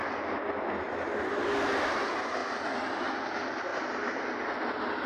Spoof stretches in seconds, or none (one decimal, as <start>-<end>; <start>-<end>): none